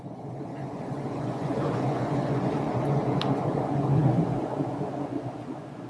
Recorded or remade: remade